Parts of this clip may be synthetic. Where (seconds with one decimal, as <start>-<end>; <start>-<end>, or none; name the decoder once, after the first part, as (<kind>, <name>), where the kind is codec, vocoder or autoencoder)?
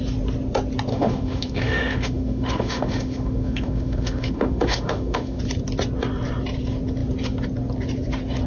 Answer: 0.9-5.4 (autoencoder, DAC-VAE)